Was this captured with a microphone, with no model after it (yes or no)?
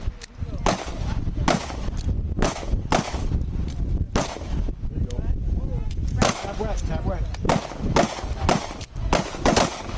yes